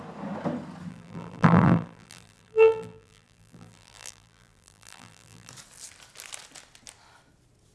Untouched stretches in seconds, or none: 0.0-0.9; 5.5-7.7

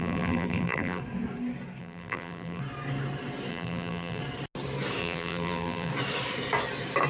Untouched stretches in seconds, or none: 1.0-1.8; 2.6-3.5; 4.2-5.0; 5.9-7.1